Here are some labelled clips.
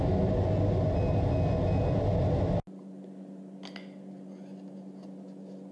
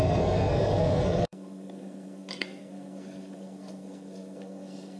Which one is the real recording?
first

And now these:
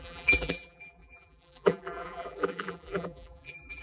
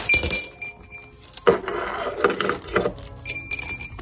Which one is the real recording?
second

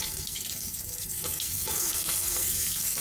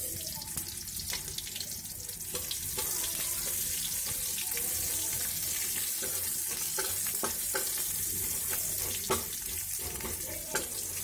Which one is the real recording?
second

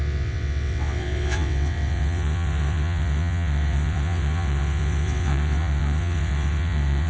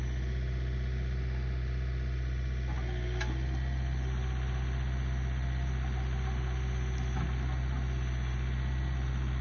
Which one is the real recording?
second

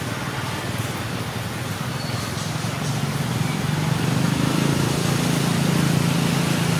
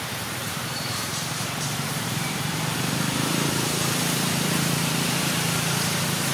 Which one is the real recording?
first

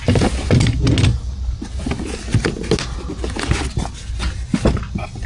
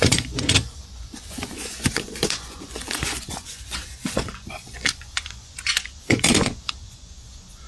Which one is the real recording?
first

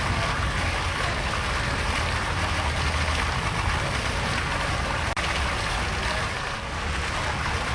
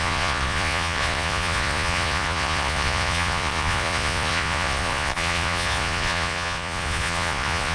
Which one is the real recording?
first